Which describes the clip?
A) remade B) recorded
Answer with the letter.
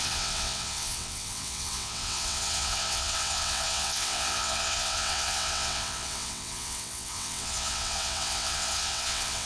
A